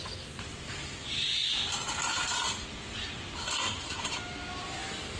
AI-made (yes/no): no